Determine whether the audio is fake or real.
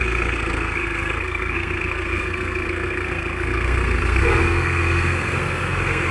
fake